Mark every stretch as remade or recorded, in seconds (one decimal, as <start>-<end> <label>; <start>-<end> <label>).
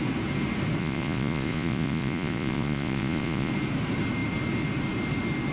0.0-0.8 recorded; 0.8-3.5 remade; 3.5-5.5 recorded